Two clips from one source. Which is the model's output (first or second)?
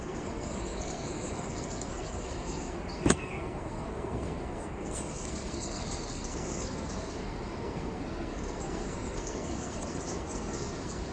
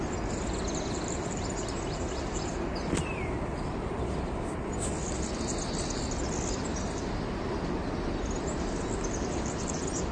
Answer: first